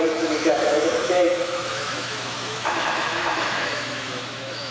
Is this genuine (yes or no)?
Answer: no